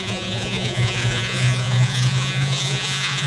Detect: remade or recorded remade